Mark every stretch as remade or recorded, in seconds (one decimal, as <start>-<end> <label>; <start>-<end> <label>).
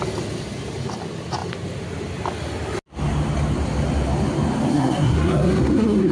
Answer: 0.0-4.7 recorded; 4.7-6.1 remade